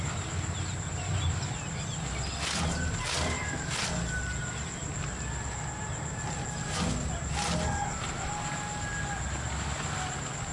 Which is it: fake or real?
real